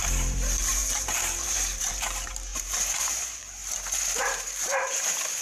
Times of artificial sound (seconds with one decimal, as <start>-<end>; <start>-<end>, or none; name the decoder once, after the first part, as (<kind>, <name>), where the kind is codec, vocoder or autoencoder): 0.0-3.6 (vocoder, BigVGAN v2); 4.2-5.4